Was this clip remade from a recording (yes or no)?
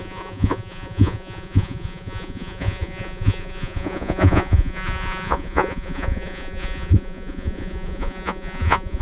yes